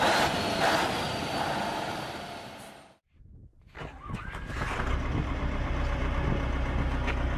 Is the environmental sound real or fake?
real